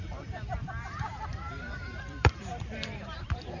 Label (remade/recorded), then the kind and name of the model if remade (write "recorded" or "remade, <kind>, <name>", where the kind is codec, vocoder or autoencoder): remade, vocoder, BigVGAN v2